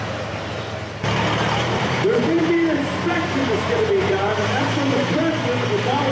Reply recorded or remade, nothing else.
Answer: remade